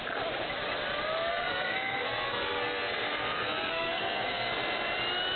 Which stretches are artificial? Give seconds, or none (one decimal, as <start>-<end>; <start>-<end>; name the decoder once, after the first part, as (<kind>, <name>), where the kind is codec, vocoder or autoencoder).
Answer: 1.3-4.5 (codec, SNAC)